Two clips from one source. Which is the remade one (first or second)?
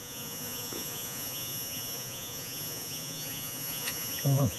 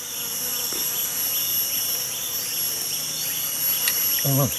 first